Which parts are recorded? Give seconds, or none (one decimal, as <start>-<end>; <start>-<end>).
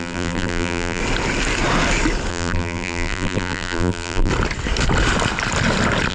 1.0-2.3; 4.3-6.1